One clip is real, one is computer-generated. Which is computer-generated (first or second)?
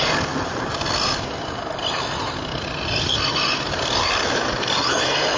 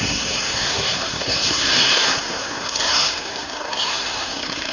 second